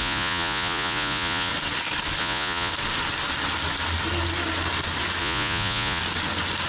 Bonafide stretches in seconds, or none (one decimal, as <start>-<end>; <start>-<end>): 1.5-2.2; 2.7-5.2; 6.0-6.7